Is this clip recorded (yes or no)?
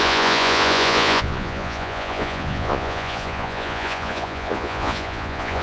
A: no